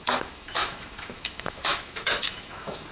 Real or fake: fake